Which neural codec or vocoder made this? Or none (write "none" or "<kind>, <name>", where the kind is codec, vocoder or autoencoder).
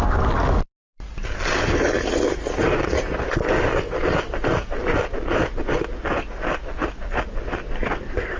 none